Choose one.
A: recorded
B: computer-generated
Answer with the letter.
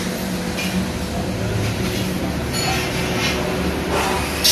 A